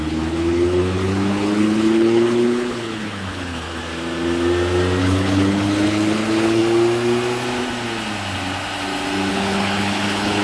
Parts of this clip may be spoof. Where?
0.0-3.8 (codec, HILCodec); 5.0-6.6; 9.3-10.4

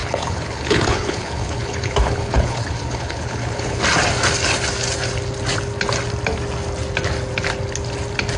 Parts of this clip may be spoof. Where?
0.0-3.8 (codec, HILCodec)

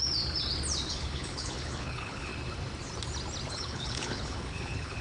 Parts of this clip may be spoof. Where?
0.9-2.3 (codec, HILCodec); 3.5-5.0

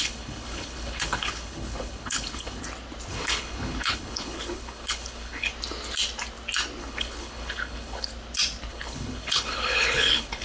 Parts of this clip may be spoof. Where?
0.0-2.6 (codec, HILCodec); 3.1-5.5; 6.8-8.1; 8.7-10.4

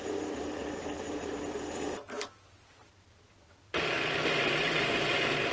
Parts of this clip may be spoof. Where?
none

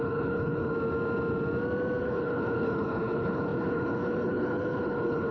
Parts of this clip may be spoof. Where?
0.0-0.7 (codec, HILCodec); 2.0-5.3

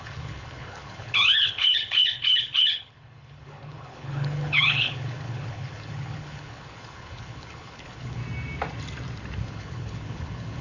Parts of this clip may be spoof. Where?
0.0-8.2 (codec, HILCodec); 9.4-10.6